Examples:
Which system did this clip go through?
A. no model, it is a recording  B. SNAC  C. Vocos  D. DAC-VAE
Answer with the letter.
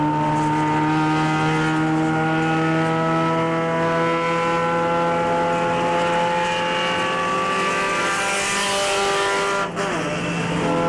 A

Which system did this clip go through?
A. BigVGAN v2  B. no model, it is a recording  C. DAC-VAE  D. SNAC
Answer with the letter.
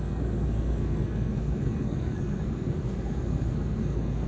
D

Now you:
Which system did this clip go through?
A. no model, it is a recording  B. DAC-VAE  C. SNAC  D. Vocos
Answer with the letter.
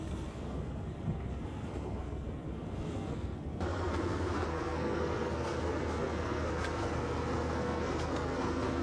C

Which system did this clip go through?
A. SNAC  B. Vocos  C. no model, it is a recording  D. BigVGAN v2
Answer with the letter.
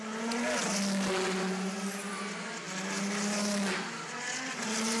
C